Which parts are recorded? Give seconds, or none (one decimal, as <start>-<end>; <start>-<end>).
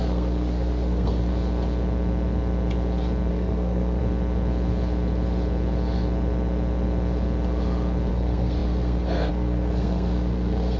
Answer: 1.3-3.3; 4.0-8.1